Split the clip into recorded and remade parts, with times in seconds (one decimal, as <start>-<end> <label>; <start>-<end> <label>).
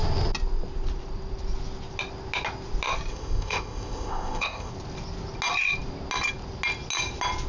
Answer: 0.0-3.1 recorded; 3.1-4.7 remade; 4.7-7.5 recorded